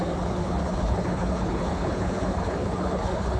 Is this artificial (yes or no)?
yes